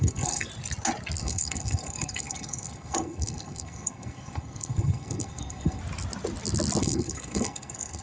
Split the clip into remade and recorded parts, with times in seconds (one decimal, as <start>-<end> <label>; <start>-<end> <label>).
0.0-0.5 remade; 0.5-1.2 recorded; 1.2-5.8 remade; 5.8-6.8 recorded; 6.8-8.0 remade